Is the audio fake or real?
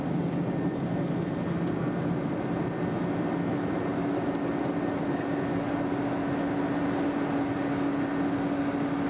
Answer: real